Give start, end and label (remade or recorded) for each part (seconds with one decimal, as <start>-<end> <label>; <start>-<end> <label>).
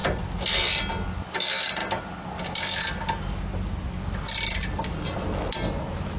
0.0-6.2 recorded